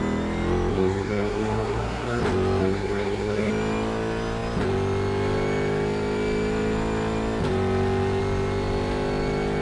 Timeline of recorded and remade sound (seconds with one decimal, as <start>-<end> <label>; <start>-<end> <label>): 0.0-0.7 recorded; 0.7-2.2 remade; 2.2-2.6 recorded; 2.6-3.5 remade; 3.5-9.6 recorded